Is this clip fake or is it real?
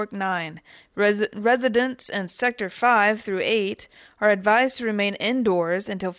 real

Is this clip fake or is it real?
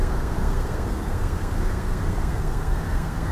fake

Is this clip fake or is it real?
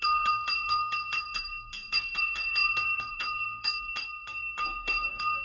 fake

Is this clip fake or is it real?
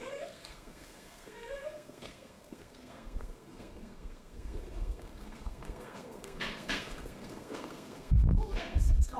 fake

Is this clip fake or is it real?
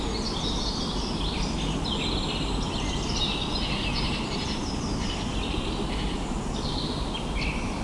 real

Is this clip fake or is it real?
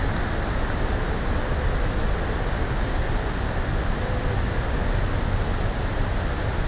real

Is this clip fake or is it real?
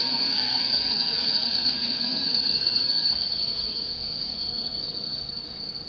fake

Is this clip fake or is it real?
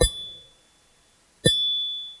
real